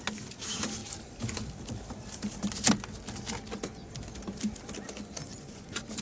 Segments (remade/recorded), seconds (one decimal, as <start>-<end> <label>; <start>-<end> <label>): 0.0-5.2 recorded; 5.2-6.0 remade